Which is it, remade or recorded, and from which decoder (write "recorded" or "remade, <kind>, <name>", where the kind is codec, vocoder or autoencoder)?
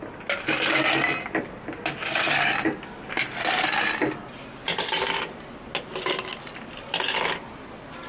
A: recorded